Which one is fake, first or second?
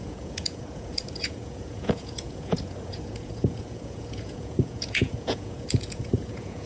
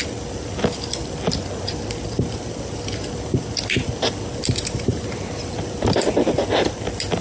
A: first